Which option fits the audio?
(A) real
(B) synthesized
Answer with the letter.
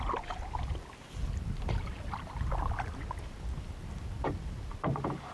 A